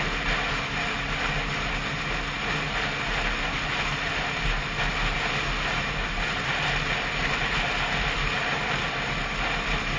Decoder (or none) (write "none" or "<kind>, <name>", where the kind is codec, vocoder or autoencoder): none